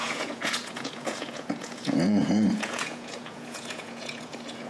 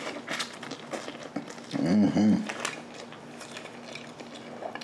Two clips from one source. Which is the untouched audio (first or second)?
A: second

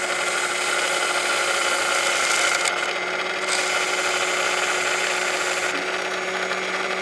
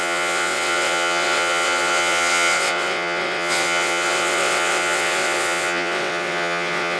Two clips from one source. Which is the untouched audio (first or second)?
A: first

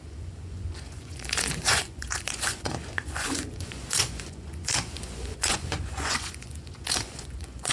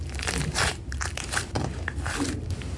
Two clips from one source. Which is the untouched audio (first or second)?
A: second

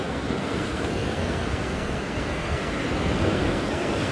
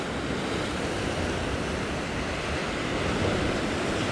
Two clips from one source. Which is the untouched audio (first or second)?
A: second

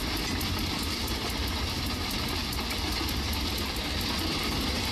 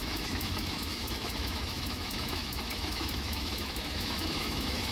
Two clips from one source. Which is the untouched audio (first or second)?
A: first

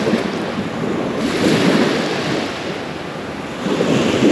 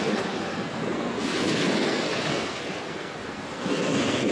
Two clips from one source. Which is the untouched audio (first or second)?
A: first